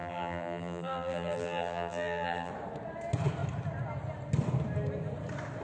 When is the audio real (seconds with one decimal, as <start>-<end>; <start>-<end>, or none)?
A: 2.5-5.6